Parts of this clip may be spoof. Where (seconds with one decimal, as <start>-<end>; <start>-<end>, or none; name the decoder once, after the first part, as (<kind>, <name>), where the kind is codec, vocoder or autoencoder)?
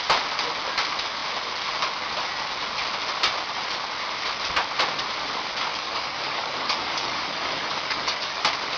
5.7-8.4 (codec, DAC)